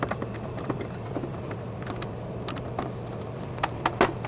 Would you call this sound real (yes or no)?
yes